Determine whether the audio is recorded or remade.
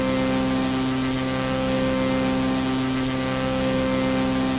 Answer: recorded